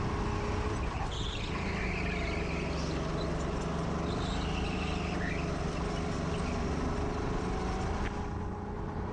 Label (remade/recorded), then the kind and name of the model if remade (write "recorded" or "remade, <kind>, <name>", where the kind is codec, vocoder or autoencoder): recorded